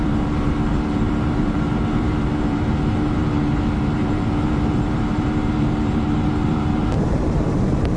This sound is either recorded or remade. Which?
remade